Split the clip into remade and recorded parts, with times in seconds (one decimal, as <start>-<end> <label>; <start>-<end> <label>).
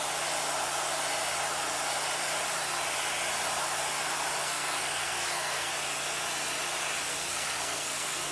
0.0-4.4 recorded; 4.4-5.7 remade; 5.7-7.1 recorded; 7.1-8.3 remade